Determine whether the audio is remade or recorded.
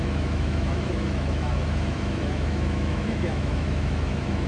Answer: remade